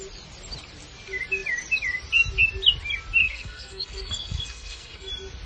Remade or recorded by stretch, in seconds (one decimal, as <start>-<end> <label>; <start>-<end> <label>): 0.0-3.2 recorded; 3.2-5.1 remade; 5.1-5.5 recorded